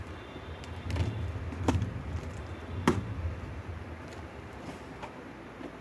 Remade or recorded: recorded